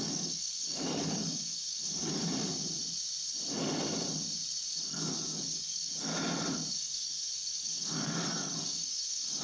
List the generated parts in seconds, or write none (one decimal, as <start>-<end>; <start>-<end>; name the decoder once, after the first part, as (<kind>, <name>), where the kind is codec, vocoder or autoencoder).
0.0-2.2 (codec, DAC); 4.7-6.1; 6.7-9.4